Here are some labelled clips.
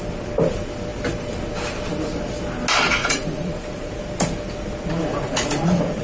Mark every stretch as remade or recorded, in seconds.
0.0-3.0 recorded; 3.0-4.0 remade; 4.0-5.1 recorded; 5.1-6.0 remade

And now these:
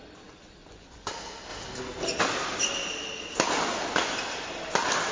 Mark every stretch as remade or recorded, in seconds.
0.0-0.6 recorded; 0.6-1.1 remade; 1.1-5.1 recorded

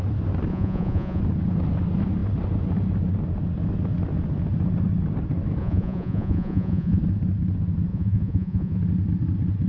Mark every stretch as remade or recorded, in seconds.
0.0-0.5 recorded; 0.5-1.2 remade; 1.2-5.6 recorded; 5.6-7.0 remade; 7.0-7.9 recorded; 7.9-8.8 remade; 8.8-9.7 recorded

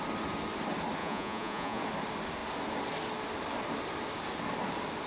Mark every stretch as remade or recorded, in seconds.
0.0-1.0 recorded; 1.0-1.8 remade; 1.8-5.1 recorded

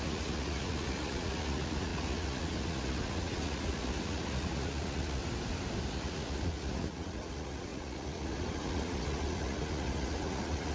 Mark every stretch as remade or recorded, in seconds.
0.0-5.2 remade; 5.2-5.9 recorded; 5.9-10.7 remade

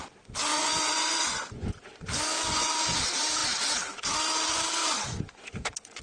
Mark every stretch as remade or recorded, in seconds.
0.0-0.5 recorded; 0.5-2.7 remade; 2.7-4.8 recorded; 4.8-6.0 remade

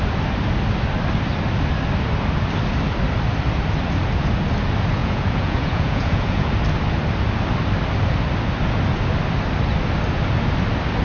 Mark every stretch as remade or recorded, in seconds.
0.0-5.0 recorded; 5.0-6.5 remade; 6.5-11.0 recorded

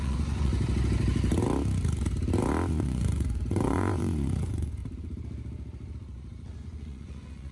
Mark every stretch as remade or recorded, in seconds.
0.0-0.5 remade; 0.5-2.7 recorded; 2.7-4.8 remade; 4.8-6.6 recorded; 6.6-7.5 remade